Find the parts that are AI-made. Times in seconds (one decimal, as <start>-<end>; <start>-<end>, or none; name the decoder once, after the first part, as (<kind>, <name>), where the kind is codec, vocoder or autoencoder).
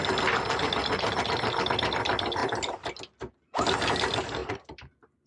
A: 4.4-5.3 (vocoder, BigVGAN v2)